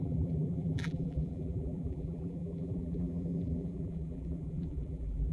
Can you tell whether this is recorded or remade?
remade